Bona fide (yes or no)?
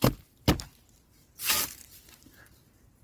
yes